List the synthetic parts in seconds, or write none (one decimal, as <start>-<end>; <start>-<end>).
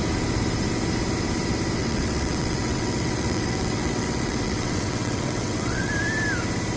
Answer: 1.8-5.9